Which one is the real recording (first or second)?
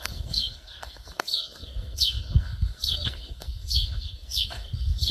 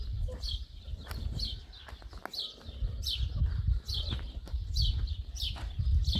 second